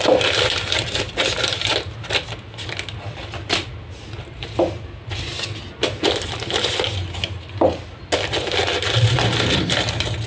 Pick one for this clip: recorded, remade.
recorded